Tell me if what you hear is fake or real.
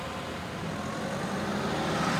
real